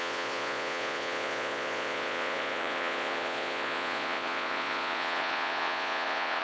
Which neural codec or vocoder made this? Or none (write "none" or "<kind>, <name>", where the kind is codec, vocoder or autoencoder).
vocoder, Vocos